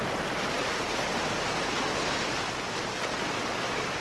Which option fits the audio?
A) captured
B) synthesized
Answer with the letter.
A